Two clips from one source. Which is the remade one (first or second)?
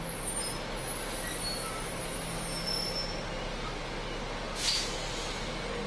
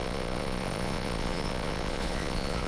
second